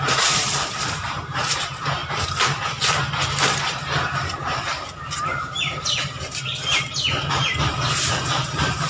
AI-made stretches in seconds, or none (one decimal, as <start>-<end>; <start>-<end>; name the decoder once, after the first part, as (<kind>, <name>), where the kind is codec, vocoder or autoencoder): 0.0-2.0 (vocoder, BigVGAN v2); 3.4-8.9